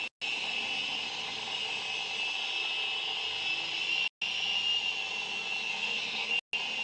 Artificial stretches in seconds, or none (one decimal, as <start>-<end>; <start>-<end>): 5.7-6.3